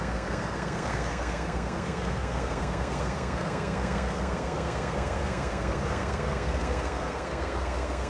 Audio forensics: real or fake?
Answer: fake